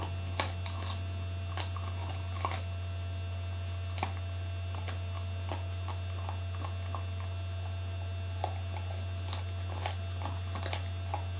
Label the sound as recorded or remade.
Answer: recorded